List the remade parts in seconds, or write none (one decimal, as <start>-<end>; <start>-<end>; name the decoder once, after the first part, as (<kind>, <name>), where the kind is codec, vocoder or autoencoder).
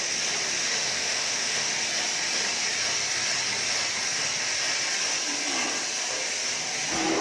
0.6-1.7 (autoencoder, DAC-VAE)